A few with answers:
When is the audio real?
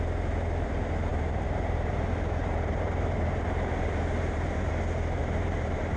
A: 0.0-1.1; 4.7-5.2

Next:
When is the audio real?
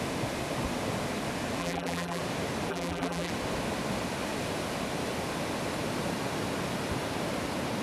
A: 0.0-1.6; 2.2-2.7; 3.3-7.8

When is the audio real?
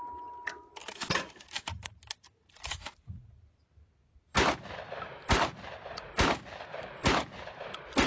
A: 0.0-0.8; 1.9-8.1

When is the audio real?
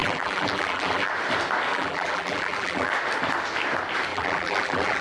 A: 1.1-1.7; 2.9-4.1